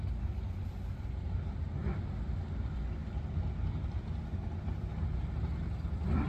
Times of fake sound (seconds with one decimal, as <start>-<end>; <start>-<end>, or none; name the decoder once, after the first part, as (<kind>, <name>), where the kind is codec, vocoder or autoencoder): none